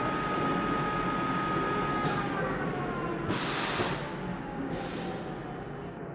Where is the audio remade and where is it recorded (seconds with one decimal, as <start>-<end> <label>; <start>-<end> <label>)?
0.0-1.9 recorded; 1.9-2.7 remade; 2.7-4.3 recorded; 4.3-5.1 remade; 5.1-6.1 recorded